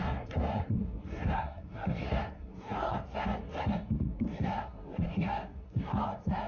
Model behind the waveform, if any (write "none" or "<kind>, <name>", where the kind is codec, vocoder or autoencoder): codec, SNAC